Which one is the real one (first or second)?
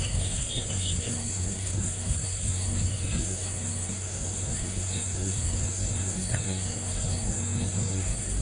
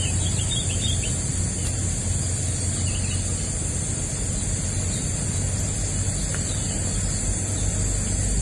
second